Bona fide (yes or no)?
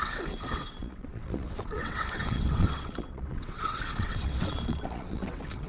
no